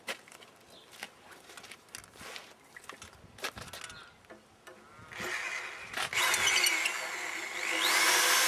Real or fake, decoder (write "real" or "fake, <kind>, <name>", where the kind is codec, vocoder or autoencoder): real